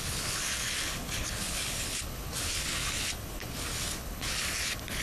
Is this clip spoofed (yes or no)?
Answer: yes